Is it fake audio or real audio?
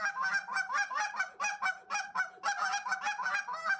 real